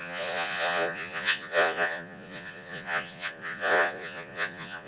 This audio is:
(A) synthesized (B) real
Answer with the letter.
A